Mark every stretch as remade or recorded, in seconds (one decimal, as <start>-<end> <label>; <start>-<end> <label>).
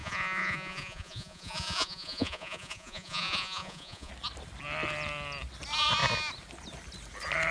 0.0-4.1 remade; 4.1-7.5 recorded